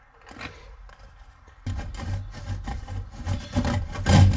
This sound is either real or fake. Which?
real